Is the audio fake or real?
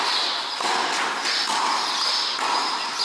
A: real